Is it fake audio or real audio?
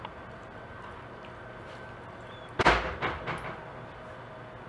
real